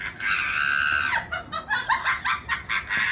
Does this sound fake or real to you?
real